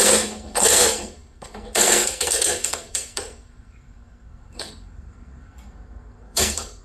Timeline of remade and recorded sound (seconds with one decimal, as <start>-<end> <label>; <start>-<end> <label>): 0.0-6.8 remade